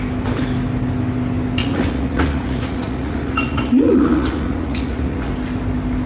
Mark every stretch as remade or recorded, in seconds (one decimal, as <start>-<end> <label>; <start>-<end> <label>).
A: 0.0-1.6 recorded; 1.6-5.3 remade; 5.3-6.1 recorded